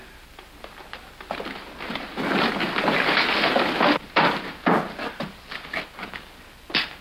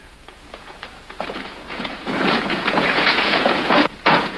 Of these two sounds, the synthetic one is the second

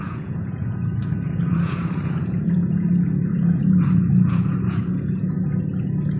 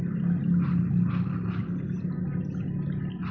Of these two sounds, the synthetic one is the first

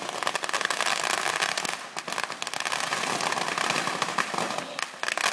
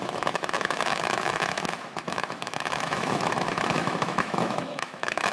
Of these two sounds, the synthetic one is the second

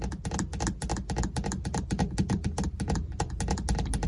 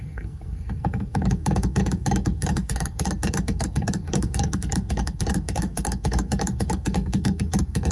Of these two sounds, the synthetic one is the second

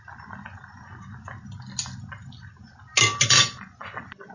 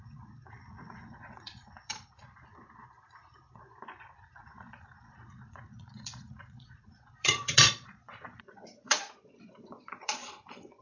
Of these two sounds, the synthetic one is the second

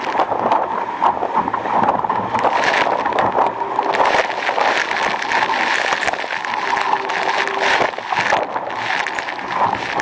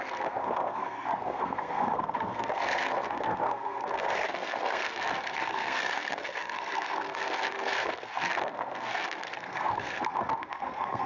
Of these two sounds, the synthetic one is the second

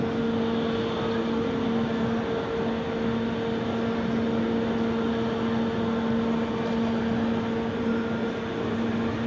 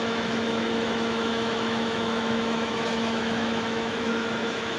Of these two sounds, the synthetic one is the second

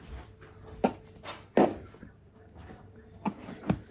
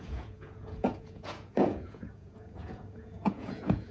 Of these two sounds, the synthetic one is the second